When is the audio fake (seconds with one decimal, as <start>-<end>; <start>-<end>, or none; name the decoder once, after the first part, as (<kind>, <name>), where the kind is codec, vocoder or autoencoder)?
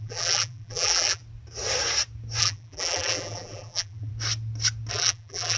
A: 0.0-1.2 (vocoder, BigVGAN v2); 2.4-4.1; 4.9-5.6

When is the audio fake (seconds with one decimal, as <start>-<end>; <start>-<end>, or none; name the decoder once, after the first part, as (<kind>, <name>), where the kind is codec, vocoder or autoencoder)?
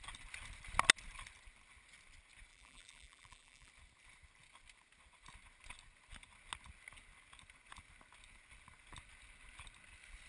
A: 2.5-3.7 (vocoder, BigVGAN v2)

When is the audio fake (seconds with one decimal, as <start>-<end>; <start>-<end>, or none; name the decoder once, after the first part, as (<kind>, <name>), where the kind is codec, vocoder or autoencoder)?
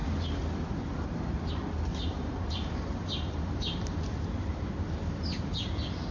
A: 1.9-4.0 (vocoder, BigVGAN v2)